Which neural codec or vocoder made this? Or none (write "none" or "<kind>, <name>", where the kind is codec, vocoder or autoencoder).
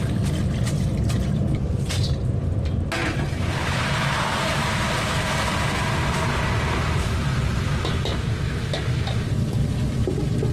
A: none